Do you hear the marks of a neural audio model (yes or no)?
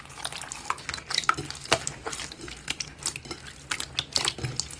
no